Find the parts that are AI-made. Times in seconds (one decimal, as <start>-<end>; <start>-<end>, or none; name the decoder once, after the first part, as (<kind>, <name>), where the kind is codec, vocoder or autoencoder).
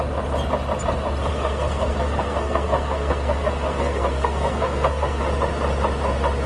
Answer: 1.3-5.2 (codec, SNAC)